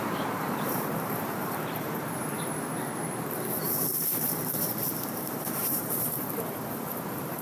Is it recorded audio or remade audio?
remade